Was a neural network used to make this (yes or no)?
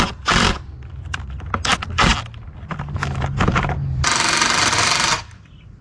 no